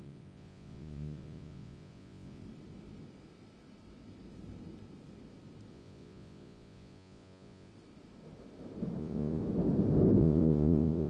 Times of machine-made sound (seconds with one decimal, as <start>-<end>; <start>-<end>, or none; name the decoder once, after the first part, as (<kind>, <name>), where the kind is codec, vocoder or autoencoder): 0.0-2.4 (vocoder, Vocos); 5.7-7.7; 9.0-9.4; 10.2-11.1